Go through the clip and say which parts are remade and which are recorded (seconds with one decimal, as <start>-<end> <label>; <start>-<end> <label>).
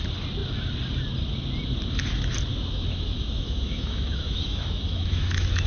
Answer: 0.0-2.5 recorded; 2.5-5.7 remade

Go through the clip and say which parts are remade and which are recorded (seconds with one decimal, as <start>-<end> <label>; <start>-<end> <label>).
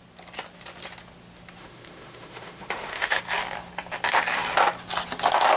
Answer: 0.0-1.6 recorded; 1.6-3.2 remade; 3.2-5.6 recorded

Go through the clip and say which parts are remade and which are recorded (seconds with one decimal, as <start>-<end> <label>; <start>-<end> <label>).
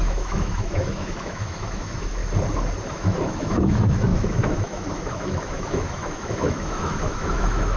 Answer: 0.0-2.2 remade; 2.2-2.9 recorded; 2.9-7.8 remade